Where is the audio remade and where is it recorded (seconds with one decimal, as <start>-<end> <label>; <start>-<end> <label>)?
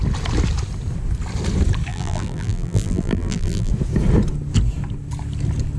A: 0.0-1.9 recorded; 1.9-3.7 remade; 3.7-5.8 recorded